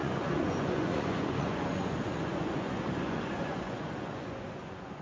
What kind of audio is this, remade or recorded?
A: remade